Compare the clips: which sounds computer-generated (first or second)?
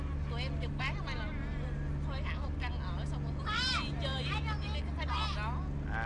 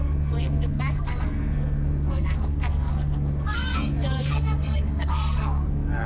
second